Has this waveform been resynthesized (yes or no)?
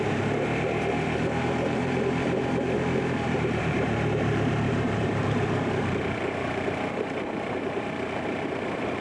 yes